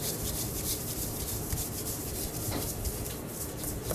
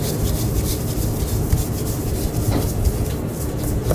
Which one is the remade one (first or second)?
first